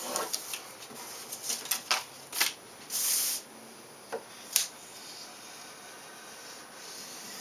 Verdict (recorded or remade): recorded